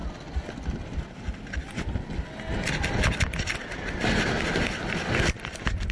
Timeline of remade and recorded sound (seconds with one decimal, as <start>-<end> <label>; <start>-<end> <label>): 0.0-5.9 recorded